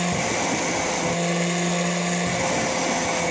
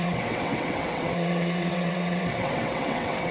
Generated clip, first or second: second